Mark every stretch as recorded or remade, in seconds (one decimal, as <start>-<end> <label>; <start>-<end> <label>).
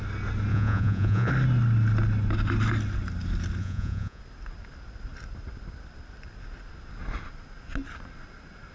0.0-0.5 recorded; 0.5-1.3 remade; 1.3-3.6 recorded; 3.6-4.2 remade; 4.2-8.7 recorded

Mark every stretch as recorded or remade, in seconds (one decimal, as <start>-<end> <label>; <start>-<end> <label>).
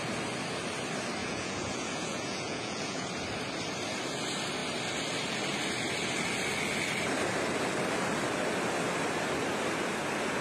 0.0-1.2 recorded; 1.2-3.1 remade; 3.1-10.4 recorded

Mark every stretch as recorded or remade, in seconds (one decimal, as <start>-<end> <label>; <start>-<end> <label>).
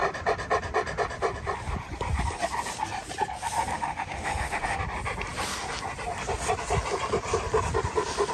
0.0-3.7 recorded; 3.7-4.8 remade; 4.8-8.3 recorded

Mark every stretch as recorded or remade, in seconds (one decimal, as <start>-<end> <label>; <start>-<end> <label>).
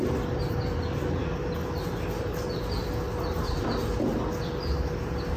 0.0-5.4 recorded